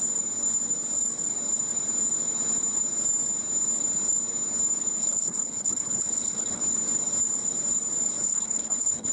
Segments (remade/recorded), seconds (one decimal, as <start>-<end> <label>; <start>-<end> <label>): 0.0-5.0 recorded; 5.0-6.6 remade; 6.6-8.2 recorded; 8.2-9.1 remade